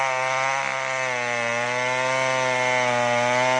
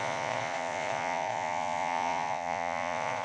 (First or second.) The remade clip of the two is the second